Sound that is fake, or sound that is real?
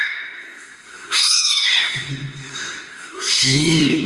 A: fake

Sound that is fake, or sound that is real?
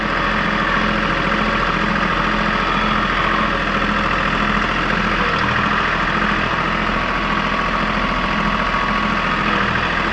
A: real